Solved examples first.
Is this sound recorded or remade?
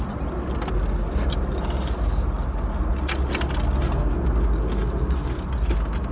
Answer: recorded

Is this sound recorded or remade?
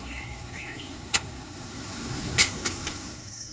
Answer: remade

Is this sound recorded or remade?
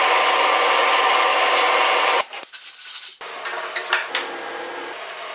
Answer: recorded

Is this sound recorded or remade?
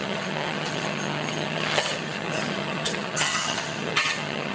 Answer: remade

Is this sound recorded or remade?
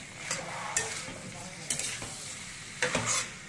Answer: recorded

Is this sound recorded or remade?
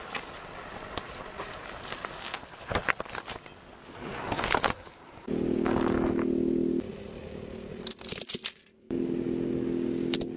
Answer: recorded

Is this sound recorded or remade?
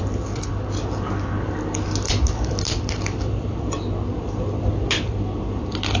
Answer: remade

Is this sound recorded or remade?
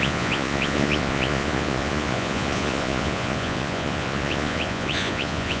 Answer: remade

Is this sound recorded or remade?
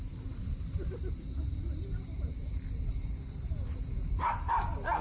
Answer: recorded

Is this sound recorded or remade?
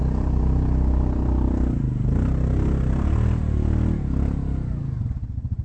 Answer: recorded